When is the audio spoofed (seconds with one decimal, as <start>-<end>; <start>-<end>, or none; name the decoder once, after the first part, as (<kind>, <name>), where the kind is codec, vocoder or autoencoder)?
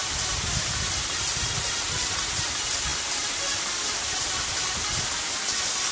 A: none